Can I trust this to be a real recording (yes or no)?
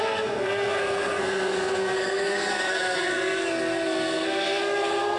no